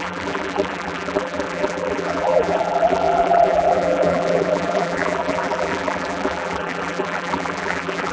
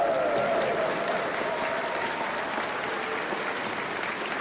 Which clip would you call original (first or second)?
second